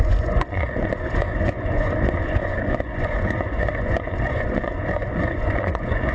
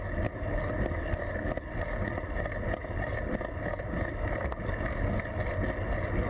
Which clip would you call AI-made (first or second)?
first